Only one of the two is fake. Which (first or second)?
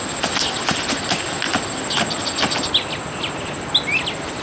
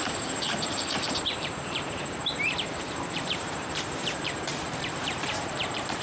second